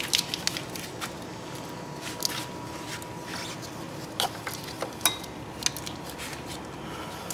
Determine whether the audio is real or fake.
real